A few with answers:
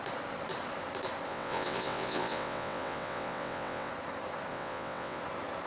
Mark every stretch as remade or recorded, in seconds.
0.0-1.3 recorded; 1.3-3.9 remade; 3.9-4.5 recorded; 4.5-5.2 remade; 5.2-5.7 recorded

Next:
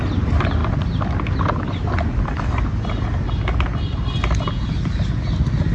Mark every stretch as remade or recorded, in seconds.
0.0-5.7 recorded

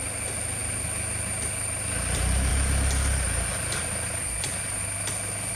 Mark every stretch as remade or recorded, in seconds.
0.0-5.5 recorded

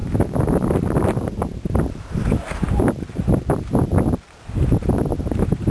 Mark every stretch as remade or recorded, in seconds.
0.0-3.9 remade; 3.9-5.3 recorded; 5.3-5.7 remade